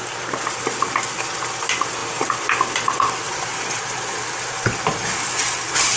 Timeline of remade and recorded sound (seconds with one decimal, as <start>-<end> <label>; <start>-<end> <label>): 0.0-6.0 recorded